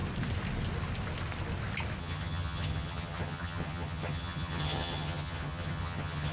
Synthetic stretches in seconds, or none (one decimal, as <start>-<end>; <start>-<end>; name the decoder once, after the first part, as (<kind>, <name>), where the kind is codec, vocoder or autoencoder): 2.0-6.3 (vocoder, HiFi-GAN)